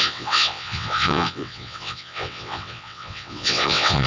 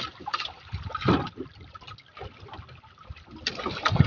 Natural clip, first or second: second